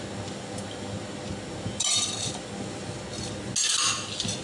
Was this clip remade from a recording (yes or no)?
no